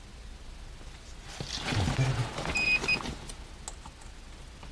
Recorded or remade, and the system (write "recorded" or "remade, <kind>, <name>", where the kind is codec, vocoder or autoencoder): recorded